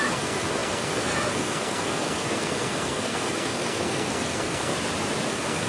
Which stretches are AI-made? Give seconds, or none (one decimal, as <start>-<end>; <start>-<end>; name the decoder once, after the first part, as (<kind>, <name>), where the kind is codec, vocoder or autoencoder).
0.0-4.7 (codec, SNAC); 5.3-5.7